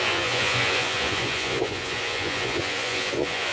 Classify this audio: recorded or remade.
remade